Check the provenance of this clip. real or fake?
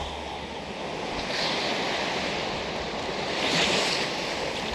fake